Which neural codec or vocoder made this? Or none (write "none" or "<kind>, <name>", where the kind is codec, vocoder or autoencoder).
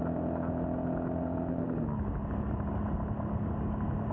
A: none